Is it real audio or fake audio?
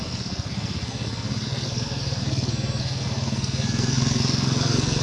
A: fake